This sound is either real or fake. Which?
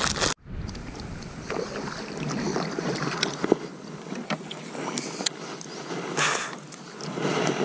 real